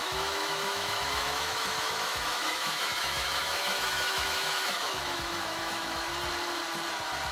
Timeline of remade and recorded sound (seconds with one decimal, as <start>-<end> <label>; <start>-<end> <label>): 0.0-6.1 remade; 6.1-7.3 recorded